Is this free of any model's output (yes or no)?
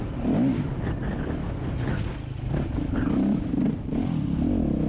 yes